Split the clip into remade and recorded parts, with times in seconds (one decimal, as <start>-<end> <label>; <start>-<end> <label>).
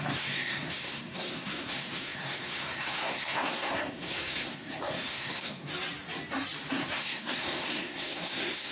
0.0-5.7 remade; 5.7-6.7 recorded; 6.7-8.7 remade